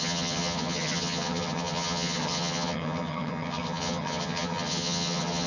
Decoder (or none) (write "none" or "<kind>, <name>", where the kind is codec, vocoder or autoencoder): vocoder, HiFi-GAN